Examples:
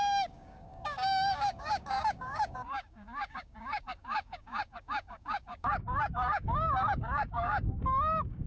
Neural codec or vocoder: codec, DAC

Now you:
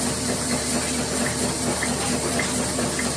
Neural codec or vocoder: none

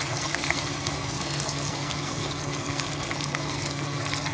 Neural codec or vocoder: codec, SNAC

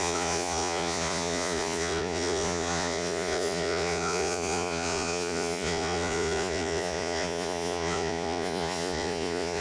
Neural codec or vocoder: vocoder, Vocos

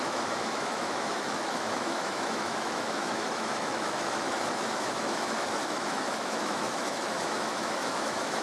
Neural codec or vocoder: autoencoder, DAC-VAE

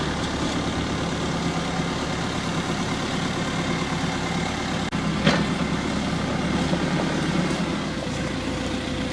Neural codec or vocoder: none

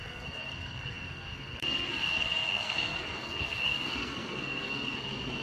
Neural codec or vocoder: codec, SNAC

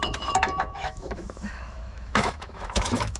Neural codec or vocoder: autoencoder, DAC-VAE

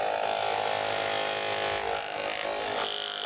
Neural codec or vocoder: none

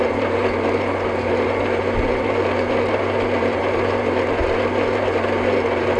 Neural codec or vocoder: vocoder, BigVGAN v2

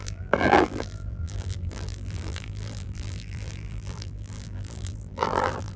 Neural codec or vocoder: vocoder, BigVGAN v2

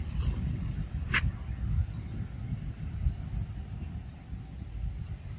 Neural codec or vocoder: none